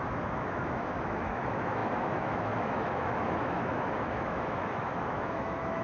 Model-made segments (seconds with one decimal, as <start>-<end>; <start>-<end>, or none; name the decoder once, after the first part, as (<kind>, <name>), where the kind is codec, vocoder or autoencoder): 0.0-5.8 (autoencoder, DAC-VAE)